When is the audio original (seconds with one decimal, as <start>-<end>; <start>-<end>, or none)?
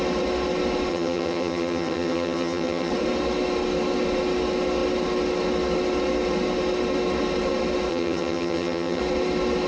0.0-0.9; 2.9-7.9; 9.0-9.7